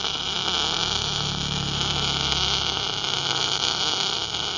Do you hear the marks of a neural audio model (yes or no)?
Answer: no